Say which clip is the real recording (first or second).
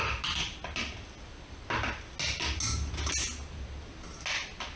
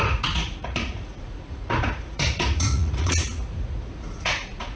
first